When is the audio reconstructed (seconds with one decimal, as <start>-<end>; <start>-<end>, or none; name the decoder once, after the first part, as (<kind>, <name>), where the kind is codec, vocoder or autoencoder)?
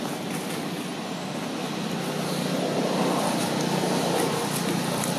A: none